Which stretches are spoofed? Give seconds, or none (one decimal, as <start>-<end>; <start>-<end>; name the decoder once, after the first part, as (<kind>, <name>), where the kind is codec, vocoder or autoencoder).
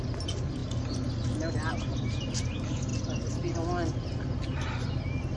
none